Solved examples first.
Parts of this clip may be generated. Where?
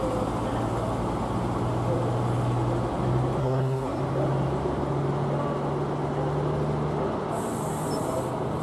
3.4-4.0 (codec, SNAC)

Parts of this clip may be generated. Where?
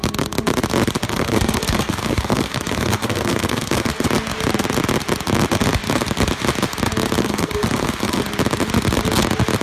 1.0-4.1 (codec, SNAC); 7.2-8.2